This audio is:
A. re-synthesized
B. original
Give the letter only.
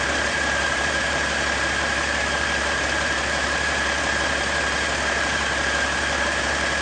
A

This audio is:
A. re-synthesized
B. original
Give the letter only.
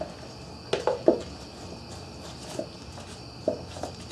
B